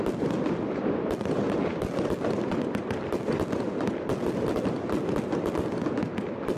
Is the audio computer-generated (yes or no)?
no